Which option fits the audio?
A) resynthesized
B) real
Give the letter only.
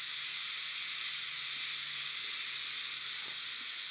B